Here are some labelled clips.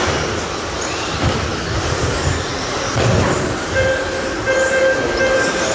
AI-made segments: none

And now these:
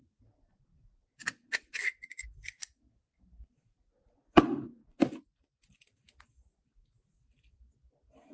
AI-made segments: 2.6-3.5